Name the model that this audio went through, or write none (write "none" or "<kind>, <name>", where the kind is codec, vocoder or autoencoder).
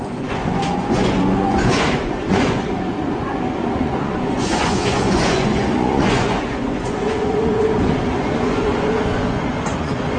vocoder, Vocos